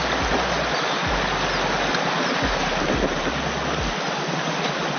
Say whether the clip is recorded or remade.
recorded